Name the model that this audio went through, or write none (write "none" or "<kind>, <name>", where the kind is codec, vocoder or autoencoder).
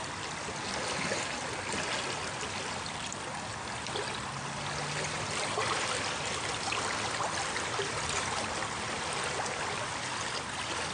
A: none